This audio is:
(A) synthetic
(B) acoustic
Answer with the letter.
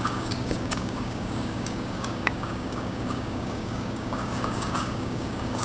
A